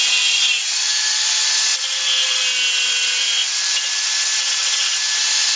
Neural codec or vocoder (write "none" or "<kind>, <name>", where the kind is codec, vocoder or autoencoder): none